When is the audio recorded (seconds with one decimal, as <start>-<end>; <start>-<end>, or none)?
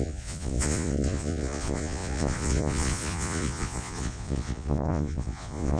none